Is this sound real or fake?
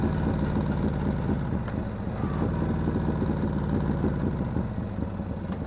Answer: real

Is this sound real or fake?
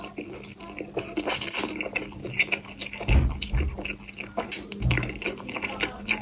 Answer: real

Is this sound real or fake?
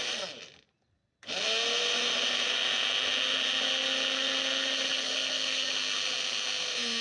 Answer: real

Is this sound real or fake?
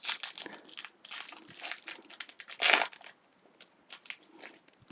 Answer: real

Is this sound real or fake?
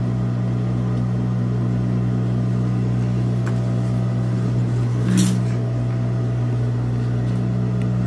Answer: real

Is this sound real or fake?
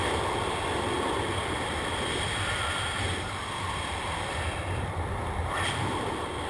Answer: fake